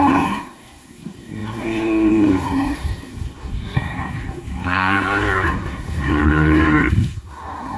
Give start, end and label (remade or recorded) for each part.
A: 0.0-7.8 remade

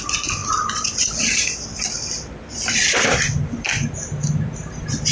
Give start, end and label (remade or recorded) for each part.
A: 0.0-0.4 recorded; 0.4-3.5 remade; 3.5-5.1 recorded

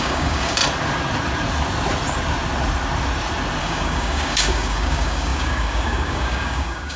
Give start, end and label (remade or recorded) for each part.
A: 0.0-0.6 remade; 0.6-3.6 recorded; 3.6-7.0 remade

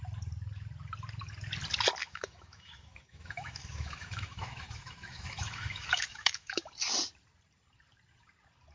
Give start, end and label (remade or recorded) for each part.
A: 0.0-2.0 recorded; 2.0-6.7 remade; 6.7-8.7 recorded

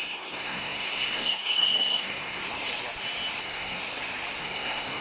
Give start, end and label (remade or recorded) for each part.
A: 0.0-2.4 remade; 2.4-3.4 recorded; 3.4-3.8 remade; 3.8-4.4 recorded; 4.4-5.0 remade

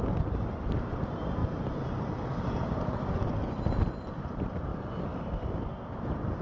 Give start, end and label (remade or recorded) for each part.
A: 0.0-1.4 remade; 1.4-2.3 recorded; 2.3-4.7 remade; 4.7-6.0 recorded; 6.0-6.4 remade